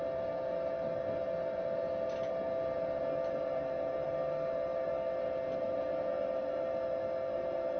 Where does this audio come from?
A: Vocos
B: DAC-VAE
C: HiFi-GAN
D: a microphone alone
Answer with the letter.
D